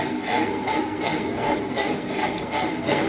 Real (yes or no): no